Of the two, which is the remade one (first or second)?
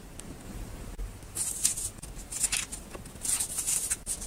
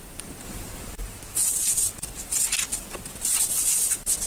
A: second